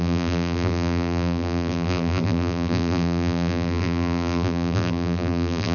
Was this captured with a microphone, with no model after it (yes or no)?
no